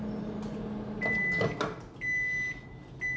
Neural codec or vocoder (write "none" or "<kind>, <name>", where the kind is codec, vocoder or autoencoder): none